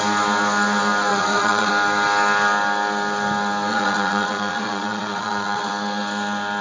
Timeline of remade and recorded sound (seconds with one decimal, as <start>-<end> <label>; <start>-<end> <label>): 0.0-1.1 recorded; 1.1-1.7 remade; 1.7-3.7 recorded; 3.7-5.7 remade; 5.7-6.6 recorded